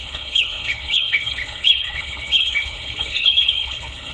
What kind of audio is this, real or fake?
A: fake